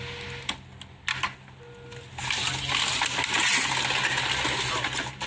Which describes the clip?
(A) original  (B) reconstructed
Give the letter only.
A